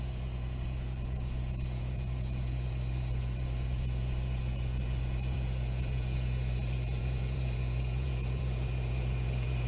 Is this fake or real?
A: fake